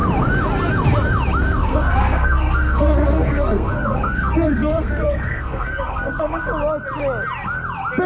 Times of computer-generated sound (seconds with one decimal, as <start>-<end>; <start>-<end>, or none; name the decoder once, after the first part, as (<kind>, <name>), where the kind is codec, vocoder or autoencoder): 1.6-6.5 (codec, SNAC)